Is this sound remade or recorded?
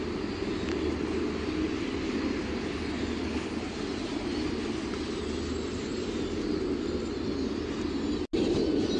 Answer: recorded